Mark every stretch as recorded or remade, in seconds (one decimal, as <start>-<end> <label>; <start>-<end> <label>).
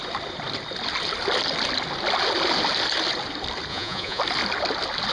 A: 0.0-3.7 recorded; 3.7-4.2 remade; 4.2-5.1 recorded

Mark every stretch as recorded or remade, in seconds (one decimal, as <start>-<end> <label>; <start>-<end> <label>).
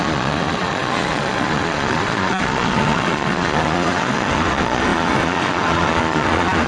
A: 0.0-6.7 remade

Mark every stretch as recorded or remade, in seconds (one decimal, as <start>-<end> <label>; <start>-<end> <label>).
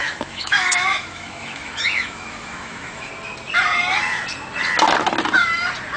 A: 0.0-3.1 remade; 3.1-6.0 recorded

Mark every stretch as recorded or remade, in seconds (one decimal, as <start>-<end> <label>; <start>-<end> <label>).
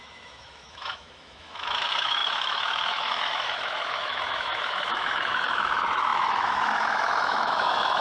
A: 0.0-8.0 remade